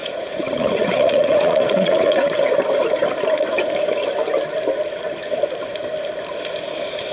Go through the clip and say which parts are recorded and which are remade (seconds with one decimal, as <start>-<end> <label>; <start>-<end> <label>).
0.0-2.4 remade; 2.4-7.1 recorded